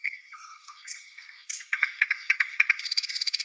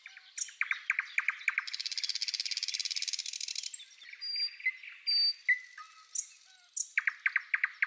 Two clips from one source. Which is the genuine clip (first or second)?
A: second